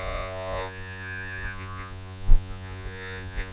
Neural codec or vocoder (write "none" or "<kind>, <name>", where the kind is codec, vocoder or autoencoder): vocoder, Vocos